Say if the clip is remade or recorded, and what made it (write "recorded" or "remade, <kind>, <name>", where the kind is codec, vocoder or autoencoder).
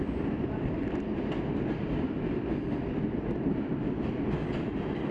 recorded